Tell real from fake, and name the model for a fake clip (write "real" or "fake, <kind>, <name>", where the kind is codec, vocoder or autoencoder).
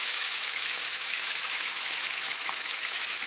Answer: fake, autoencoder, DAC-VAE